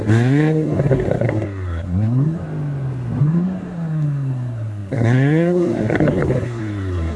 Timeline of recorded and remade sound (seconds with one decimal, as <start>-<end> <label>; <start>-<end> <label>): 0.0-2.4 remade; 2.4-3.2 recorded; 3.2-7.2 remade